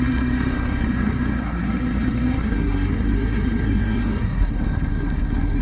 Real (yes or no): no